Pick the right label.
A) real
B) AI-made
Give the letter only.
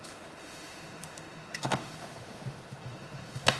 B